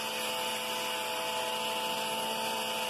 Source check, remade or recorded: recorded